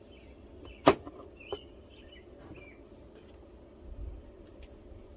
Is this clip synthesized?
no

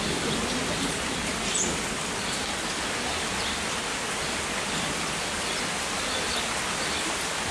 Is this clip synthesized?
no